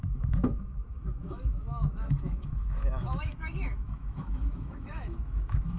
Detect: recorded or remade remade